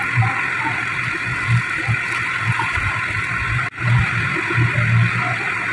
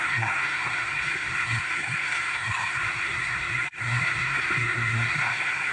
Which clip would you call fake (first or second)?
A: second